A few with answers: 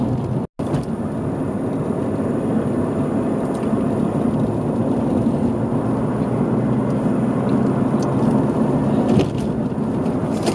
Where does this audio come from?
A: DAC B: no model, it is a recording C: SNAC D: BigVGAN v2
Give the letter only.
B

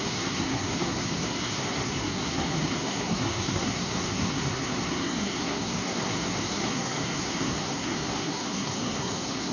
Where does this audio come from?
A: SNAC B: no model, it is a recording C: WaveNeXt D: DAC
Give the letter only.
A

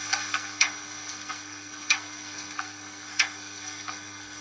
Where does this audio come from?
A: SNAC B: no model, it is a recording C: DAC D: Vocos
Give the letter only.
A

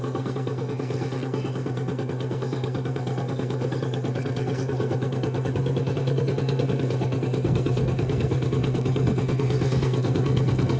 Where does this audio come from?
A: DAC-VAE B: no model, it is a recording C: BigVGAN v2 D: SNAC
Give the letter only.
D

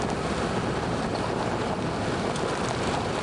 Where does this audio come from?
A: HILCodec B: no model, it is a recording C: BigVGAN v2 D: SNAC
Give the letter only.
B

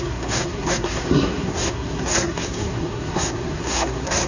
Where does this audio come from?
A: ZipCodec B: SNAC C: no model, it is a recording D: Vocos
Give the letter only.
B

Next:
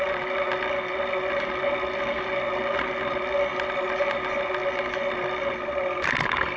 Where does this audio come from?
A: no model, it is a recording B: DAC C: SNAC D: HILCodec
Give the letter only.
A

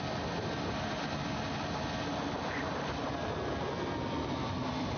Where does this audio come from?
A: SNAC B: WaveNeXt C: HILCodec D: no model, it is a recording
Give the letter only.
D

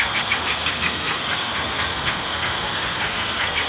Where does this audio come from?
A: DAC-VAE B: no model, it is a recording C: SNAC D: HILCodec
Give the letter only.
C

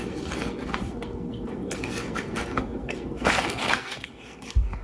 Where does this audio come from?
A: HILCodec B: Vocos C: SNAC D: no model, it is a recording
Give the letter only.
C